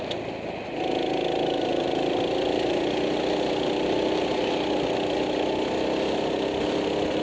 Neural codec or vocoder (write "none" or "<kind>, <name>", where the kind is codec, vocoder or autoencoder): none